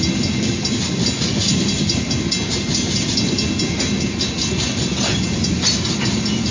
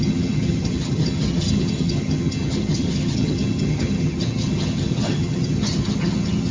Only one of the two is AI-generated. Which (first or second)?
second